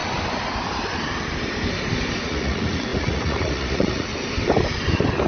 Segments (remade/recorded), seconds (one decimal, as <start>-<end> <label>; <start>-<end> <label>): 0.0-2.2 recorded; 2.2-4.1 remade; 4.1-5.3 recorded

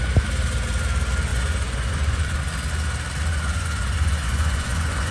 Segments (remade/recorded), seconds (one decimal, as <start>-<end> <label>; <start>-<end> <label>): 0.0-1.3 recorded; 1.3-2.4 remade; 2.4-3.3 recorded; 3.3-5.1 remade